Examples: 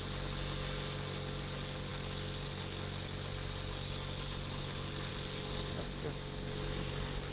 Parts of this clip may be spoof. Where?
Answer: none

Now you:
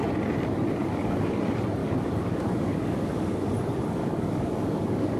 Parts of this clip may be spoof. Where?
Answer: 0.8-1.4 (codec, DAC); 1.8-3.5; 4.0-5.2

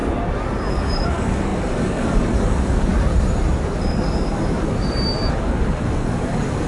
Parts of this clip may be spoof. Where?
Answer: 0.7-2.9 (codec, DAC); 3.8-6.7

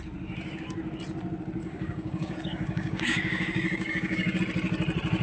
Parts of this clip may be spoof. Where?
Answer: 1.6-4.4 (codec, DAC)

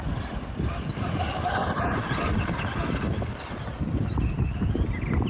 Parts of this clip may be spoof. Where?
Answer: none